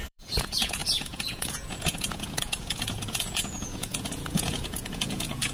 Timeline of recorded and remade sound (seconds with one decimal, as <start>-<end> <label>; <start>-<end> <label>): 0.0-5.5 remade